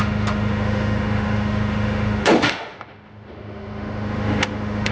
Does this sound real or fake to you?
fake